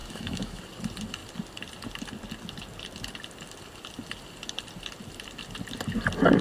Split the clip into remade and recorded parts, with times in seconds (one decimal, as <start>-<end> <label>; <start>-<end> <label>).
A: 0.0-0.6 remade; 0.6-6.4 recorded